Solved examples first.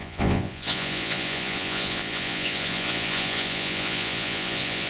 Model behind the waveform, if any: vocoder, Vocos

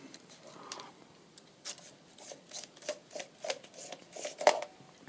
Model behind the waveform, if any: none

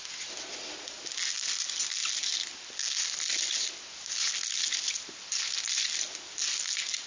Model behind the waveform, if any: none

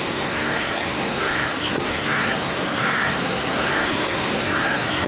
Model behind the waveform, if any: codec, SNAC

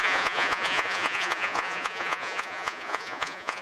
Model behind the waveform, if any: vocoder, Vocos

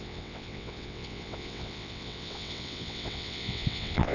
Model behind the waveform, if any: vocoder, WaveNeXt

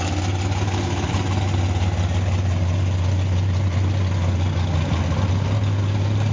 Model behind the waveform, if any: none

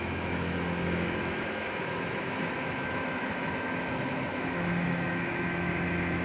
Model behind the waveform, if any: autoencoder, DAC-VAE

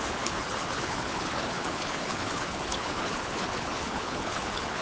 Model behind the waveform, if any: codec, HILCodec